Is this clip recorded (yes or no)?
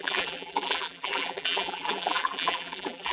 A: no